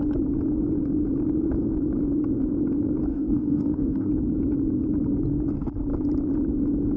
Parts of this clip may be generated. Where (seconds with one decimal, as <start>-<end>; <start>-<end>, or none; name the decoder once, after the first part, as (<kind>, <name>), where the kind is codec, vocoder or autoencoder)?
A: 3.1-4.1 (codec, DAC)